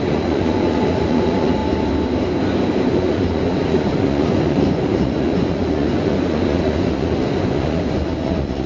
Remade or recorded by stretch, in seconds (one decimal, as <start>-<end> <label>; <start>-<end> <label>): 0.0-1.6 remade; 1.6-2.9 recorded; 2.9-8.7 remade